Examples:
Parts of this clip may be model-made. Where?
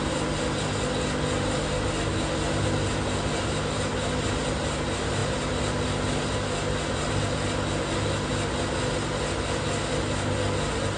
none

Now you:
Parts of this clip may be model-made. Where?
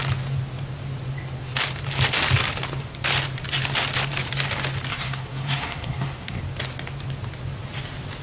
4.9-6.4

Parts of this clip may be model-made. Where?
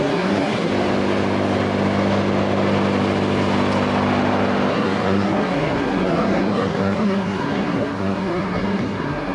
0.0-0.7; 4.7-9.3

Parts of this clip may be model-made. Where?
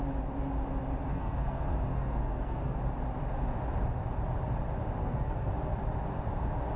1.1-2.8; 5.0-5.5